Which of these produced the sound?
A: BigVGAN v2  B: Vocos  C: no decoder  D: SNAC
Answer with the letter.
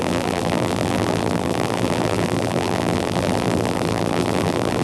A